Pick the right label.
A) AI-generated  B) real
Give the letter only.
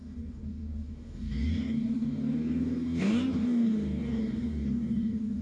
A